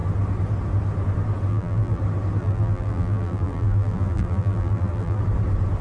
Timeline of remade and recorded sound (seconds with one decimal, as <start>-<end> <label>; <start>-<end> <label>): 0.0-1.5 recorded; 1.5-2.0 remade; 2.0-2.4 recorded; 2.4-5.2 remade; 5.2-5.8 recorded